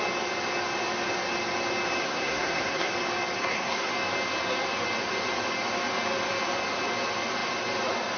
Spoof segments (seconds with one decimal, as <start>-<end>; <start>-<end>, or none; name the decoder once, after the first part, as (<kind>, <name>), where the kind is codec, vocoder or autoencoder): 2.0-2.9 (codec, SNAC); 3.4-3.9